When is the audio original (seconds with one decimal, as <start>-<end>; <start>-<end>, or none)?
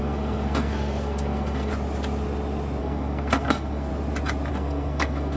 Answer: 1.7-2.8; 3.9-4.5